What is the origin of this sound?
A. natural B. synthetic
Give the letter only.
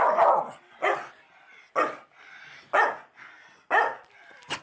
A